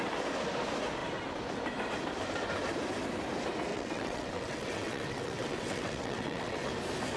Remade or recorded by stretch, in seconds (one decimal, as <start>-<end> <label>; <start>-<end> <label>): 0.0-3.7 recorded; 3.7-6.7 remade; 6.7-7.2 recorded